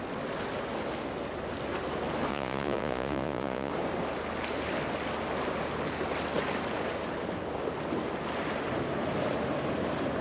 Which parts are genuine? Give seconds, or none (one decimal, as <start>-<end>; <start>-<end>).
0.0-2.3; 3.7-10.2